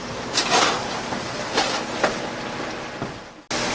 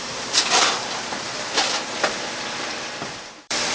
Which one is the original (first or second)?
first